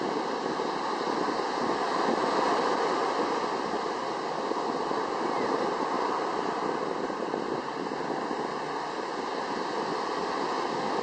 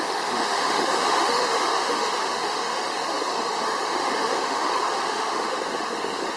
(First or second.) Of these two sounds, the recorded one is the first